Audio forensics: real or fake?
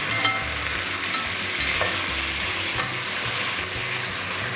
real